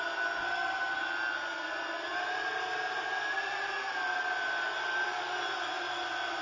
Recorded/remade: recorded